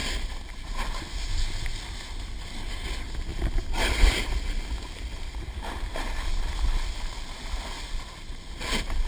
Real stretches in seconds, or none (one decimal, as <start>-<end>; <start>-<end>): 1.3-3.3; 7.7-9.1